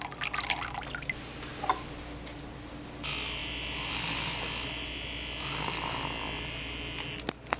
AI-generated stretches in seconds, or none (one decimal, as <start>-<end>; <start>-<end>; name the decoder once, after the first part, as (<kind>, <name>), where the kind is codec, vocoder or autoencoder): none